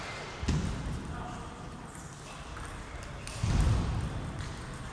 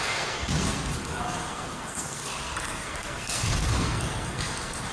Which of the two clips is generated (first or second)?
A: second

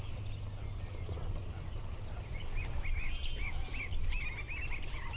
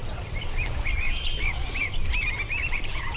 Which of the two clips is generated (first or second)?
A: second